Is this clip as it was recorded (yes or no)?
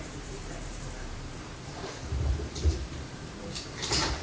no